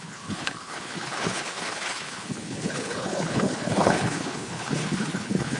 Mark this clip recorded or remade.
remade